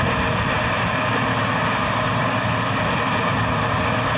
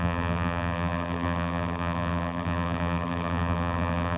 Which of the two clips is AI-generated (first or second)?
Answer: second